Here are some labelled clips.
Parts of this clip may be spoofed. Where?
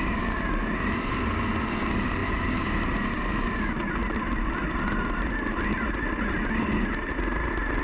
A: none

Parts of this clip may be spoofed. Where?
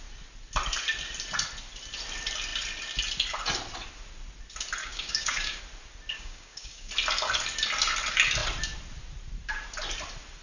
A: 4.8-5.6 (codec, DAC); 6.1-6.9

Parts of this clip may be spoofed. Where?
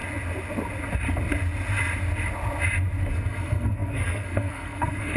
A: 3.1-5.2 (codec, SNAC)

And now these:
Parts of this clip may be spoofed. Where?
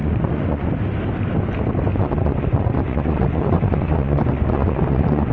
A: 0.0-0.7 (vocoder, Vocos); 1.9-5.3